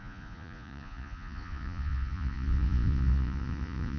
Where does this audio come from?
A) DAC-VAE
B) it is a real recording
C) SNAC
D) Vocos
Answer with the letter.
D